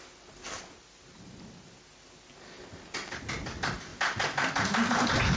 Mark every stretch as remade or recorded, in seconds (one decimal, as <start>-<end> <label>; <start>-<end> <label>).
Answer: 0.0-5.4 recorded